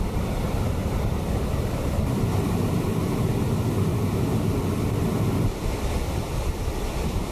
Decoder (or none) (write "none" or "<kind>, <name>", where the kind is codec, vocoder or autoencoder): none